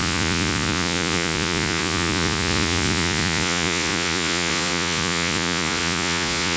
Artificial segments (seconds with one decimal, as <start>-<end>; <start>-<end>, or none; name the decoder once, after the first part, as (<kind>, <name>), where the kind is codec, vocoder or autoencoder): 0.0-6.6 (vocoder, Vocos)